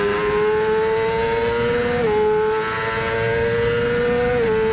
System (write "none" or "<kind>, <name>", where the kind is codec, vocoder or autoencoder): none